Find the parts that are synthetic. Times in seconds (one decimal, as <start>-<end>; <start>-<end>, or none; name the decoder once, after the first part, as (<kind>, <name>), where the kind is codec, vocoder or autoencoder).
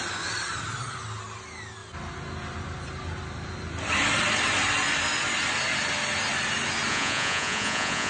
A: 6.9-8.1 (vocoder, Vocos)